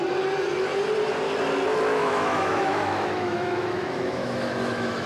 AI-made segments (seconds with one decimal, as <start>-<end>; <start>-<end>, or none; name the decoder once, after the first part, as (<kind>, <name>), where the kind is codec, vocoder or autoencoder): 1.9-5.1 (autoencoder, DAC-VAE)